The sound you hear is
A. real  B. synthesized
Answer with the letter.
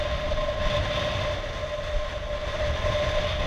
A